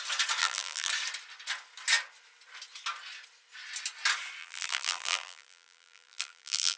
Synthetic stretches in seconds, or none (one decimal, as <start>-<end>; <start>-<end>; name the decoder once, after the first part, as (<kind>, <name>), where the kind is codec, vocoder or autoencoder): 0.4-0.9 (vocoder, BigVGAN v2); 4.4-6.8